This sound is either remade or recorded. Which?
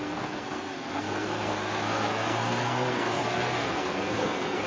remade